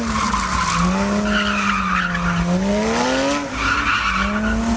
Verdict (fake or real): real